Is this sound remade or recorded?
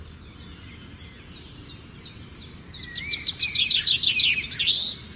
recorded